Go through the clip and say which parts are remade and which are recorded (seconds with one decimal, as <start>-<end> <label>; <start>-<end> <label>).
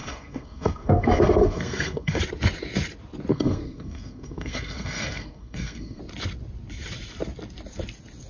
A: 0.0-2.2 remade; 2.2-3.3 recorded; 3.3-6.0 remade; 6.0-8.3 recorded